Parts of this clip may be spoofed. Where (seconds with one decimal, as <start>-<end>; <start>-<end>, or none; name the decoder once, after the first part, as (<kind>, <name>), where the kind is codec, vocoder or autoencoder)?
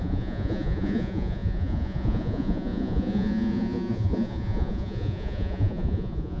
0.0-6.4 (vocoder, Vocos)